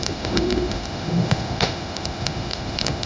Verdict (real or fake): fake